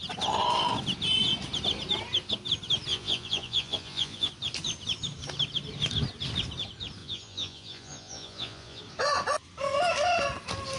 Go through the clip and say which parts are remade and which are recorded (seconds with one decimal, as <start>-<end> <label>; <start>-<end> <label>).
0.0-2.9 recorded; 2.9-4.3 remade; 4.3-7.0 recorded; 7.0-8.8 remade; 8.8-10.8 recorded